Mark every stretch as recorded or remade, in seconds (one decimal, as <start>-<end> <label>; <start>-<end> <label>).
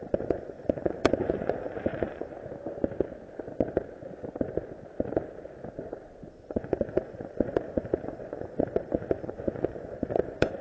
0.0-2.3 remade; 2.3-6.3 recorded; 6.3-10.6 remade